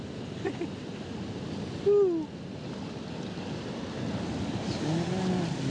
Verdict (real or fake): real